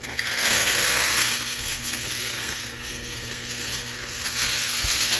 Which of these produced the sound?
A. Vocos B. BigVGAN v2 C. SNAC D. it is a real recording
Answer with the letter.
C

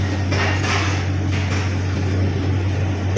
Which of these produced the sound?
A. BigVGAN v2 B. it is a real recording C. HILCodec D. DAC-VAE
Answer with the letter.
B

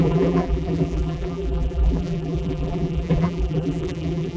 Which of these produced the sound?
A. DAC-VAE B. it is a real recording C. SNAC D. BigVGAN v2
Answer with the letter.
D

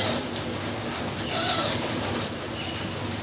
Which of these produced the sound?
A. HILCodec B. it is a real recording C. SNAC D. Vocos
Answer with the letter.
B